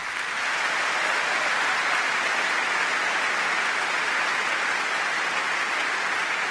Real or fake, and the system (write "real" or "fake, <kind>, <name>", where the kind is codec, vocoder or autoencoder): real